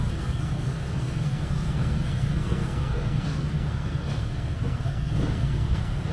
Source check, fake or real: fake